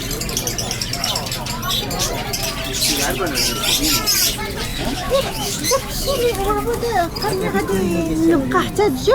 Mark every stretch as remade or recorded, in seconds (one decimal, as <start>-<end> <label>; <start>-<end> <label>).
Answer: 0.0-4.7 recorded; 4.7-7.0 remade; 7.0-9.1 recorded